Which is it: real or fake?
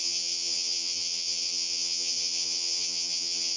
fake